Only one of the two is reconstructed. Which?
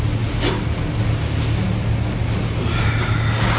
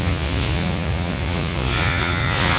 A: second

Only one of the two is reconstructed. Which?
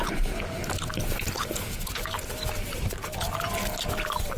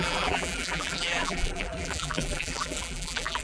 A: second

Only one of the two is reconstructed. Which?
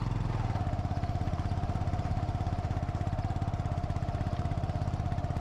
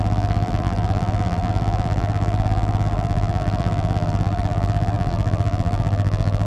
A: second